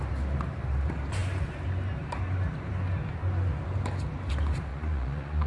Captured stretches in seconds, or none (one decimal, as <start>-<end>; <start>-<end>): 0.0-4.7